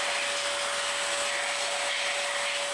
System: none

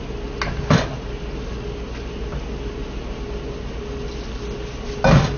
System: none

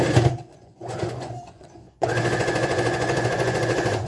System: vocoder, Vocos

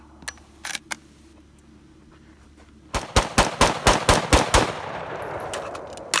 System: none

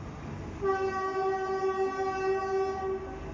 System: none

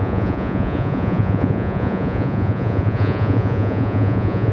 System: vocoder, Vocos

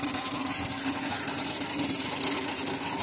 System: none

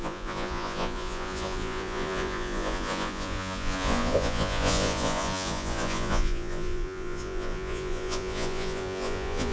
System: vocoder, Vocos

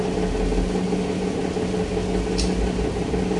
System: none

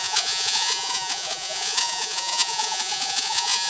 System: vocoder, Vocos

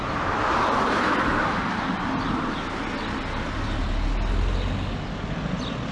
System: none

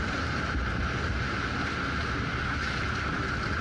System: none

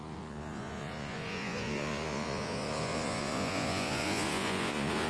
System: vocoder, Vocos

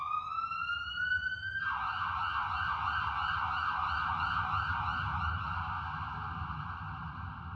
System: none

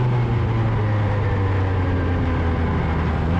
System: none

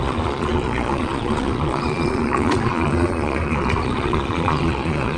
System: vocoder, Vocos